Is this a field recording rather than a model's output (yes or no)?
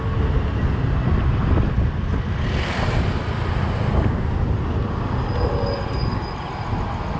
yes